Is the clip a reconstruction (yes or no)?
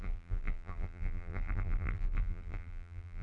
yes